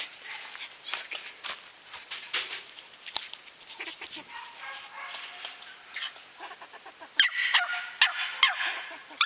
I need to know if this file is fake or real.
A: real